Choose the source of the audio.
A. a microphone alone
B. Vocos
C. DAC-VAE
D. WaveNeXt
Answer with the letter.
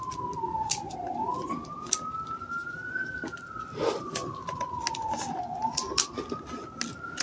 A